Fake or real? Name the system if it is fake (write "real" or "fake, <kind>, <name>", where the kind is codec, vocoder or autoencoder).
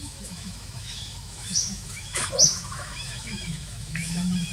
fake, autoencoder, DAC-VAE